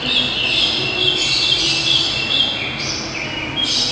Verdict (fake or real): real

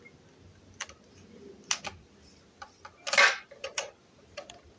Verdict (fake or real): real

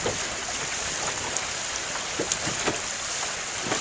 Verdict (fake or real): fake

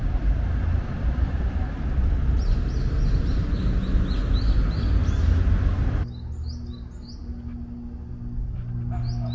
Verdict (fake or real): real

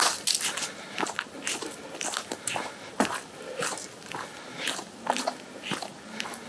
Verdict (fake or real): real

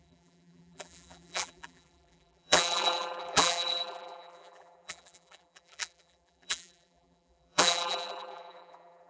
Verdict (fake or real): fake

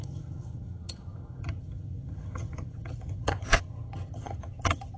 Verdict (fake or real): fake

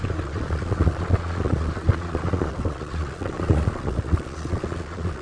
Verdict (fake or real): fake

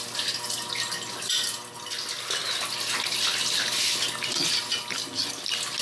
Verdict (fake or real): real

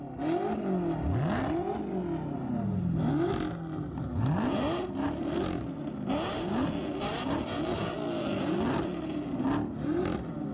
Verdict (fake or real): real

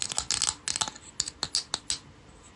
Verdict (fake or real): real